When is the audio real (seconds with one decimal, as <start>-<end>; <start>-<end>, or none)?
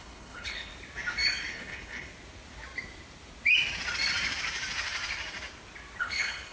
0.7-1.5; 2.1-6.0